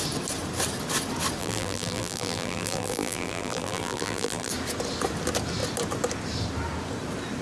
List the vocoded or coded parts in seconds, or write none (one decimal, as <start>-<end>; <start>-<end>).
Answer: 1.4-4.5